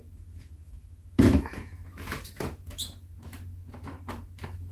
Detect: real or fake fake